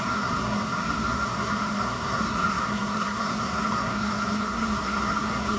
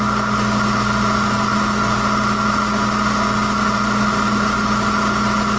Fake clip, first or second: first